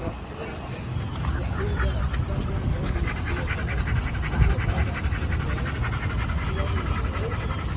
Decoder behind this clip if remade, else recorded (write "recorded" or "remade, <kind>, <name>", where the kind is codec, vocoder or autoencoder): recorded